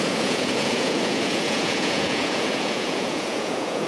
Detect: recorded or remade remade